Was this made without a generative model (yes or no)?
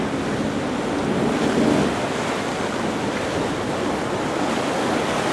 yes